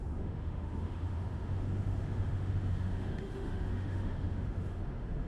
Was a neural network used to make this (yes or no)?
yes